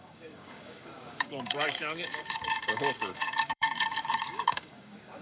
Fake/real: fake